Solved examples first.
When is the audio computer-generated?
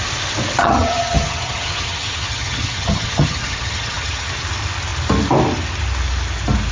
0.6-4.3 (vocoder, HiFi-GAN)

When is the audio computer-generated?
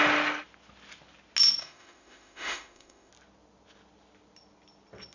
1.6-3.1 (autoencoder, DAC-VAE)